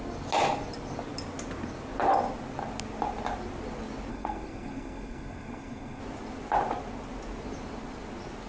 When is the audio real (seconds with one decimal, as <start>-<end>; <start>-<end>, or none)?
0.0-4.1; 6.0-8.5